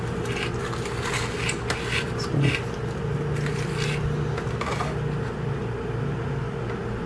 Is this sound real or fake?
real